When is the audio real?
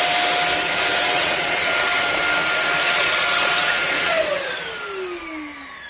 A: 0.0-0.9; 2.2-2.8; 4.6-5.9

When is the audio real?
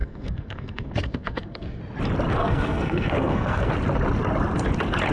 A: 1.8-2.4; 3.7-5.1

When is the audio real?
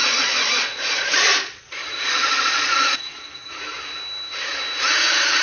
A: 3.2-5.4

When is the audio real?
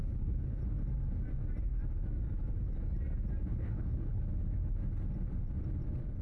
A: 0.6-3.5; 4.2-6.2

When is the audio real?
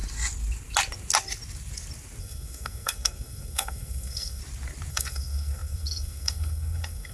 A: 0.0-2.2; 4.4-4.9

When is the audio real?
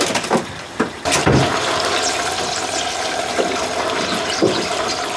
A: 0.0-3.3; 4.7-5.2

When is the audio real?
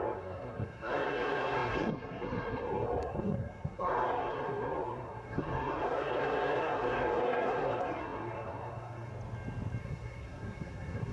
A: 9.1-9.8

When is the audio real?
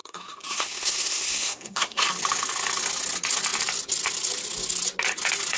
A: 2.1-5.6